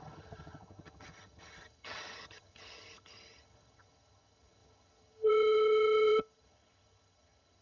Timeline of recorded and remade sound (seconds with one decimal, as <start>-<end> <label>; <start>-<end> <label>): 0.0-7.6 remade